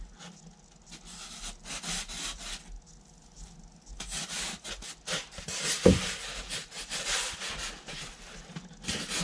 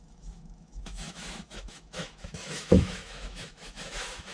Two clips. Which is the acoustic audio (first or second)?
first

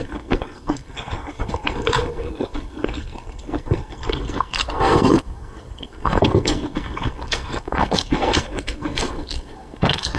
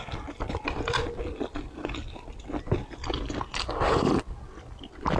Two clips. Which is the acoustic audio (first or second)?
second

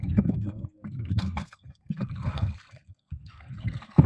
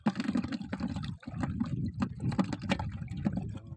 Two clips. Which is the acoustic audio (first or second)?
second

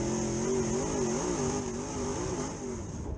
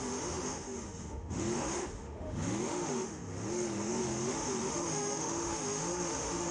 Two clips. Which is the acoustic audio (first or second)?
first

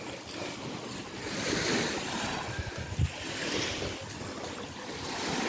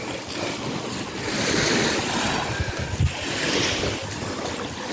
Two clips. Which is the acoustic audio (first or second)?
second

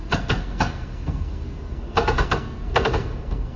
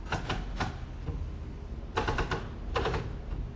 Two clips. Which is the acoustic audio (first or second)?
second